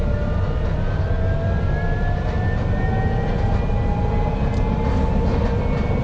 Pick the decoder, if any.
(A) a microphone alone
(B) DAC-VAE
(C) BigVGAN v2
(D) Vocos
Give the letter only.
A